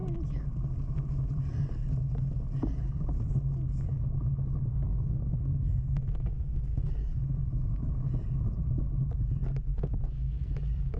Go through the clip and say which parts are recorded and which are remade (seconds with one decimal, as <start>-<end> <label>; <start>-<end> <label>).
0.0-4.7 recorded; 4.7-6.9 remade; 6.9-9.7 recorded; 9.7-10.5 remade; 10.5-11.0 recorded